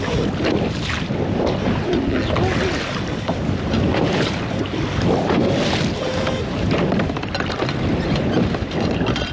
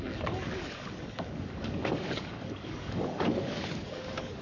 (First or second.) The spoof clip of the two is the second